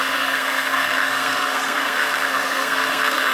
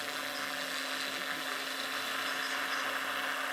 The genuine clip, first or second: second